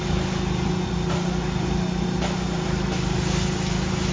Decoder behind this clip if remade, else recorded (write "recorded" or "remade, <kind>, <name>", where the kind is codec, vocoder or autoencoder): recorded